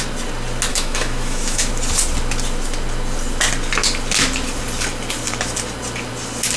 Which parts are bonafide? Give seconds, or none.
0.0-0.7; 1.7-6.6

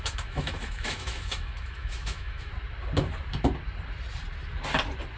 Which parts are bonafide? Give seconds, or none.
2.5-5.2

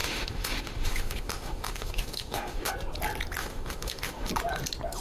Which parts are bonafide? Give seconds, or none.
2.7-3.4; 4.3-5.0

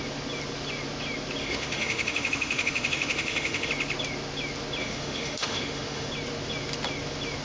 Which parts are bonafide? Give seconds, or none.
0.0-1.4; 3.7-4.8; 6.1-7.4